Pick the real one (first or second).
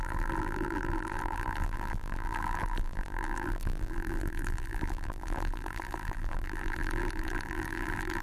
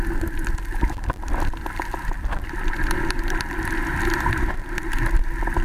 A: second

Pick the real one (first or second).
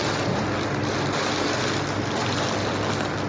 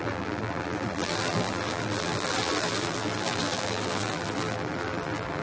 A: first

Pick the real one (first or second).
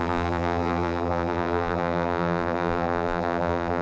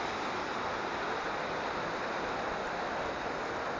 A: second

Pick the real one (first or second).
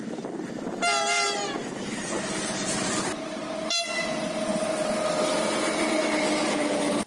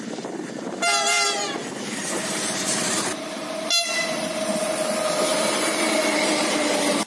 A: first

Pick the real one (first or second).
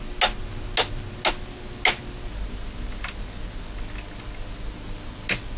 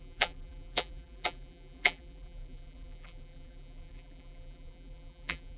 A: first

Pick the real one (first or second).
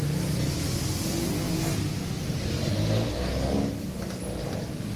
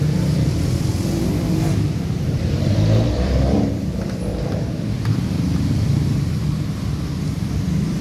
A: first